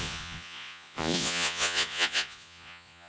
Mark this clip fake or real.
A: fake